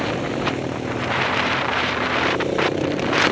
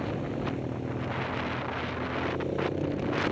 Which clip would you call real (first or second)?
second